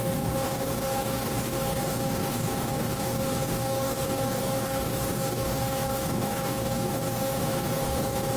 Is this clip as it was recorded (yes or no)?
no